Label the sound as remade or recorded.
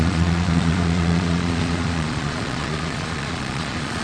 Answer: remade